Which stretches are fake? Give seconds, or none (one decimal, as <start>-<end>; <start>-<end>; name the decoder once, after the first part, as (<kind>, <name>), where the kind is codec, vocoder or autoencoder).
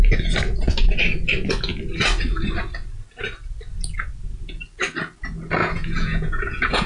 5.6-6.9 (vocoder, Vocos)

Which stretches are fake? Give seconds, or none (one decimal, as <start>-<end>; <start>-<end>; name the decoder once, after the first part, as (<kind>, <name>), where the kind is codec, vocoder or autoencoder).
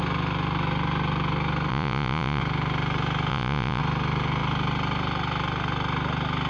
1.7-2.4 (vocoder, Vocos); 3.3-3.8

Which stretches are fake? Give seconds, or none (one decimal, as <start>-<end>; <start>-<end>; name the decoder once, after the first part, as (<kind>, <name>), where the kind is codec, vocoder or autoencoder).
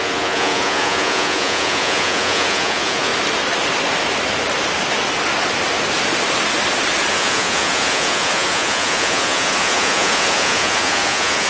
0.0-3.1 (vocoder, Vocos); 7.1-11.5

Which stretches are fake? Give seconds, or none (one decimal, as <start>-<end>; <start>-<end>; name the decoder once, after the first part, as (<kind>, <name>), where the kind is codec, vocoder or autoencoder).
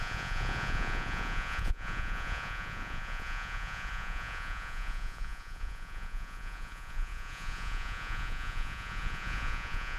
0.0-10.0 (vocoder, Vocos)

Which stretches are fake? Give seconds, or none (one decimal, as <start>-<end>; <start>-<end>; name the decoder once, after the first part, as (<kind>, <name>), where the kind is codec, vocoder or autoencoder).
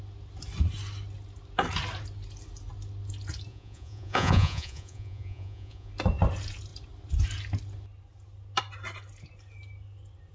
3.5-5.9 (vocoder, Vocos)